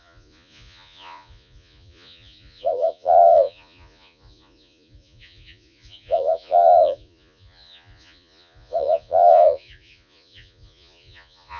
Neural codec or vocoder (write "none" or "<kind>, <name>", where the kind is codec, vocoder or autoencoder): vocoder, Vocos